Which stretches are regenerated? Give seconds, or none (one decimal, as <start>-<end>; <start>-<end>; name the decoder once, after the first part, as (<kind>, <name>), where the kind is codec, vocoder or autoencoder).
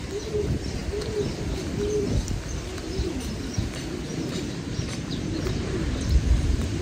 4.1-6.8 (vocoder, BigVGAN v2)